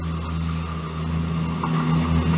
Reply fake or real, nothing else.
real